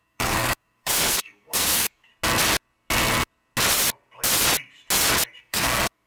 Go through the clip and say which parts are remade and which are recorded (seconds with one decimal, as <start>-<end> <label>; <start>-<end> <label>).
0.0-2.1 remade; 2.1-5.4 recorded; 5.4-6.1 remade